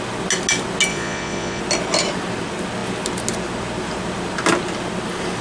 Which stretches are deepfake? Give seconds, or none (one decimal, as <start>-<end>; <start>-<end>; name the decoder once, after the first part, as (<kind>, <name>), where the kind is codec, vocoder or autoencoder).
0.9-1.6 (vocoder, Vocos)